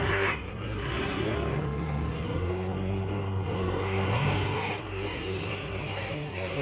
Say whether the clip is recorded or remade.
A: remade